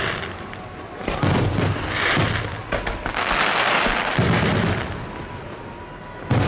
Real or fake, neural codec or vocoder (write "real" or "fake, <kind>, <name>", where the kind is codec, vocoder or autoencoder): real